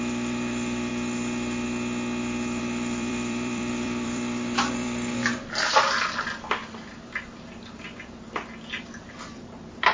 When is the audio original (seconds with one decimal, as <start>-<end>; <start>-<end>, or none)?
0.9-2.6; 6.6-8.8